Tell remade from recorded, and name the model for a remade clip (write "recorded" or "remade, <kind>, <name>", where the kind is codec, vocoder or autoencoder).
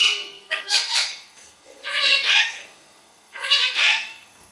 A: remade, codec, SNAC